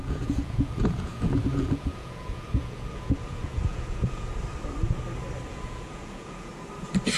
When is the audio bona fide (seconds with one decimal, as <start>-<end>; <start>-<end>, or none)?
4.3-5.5; 6.5-7.2